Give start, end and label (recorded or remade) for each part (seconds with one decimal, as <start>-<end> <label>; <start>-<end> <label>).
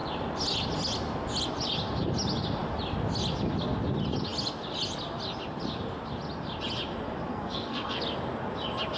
0.0-7.3 recorded; 7.3-8.0 remade; 8.0-9.0 recorded